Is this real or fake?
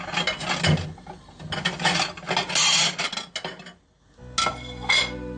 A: real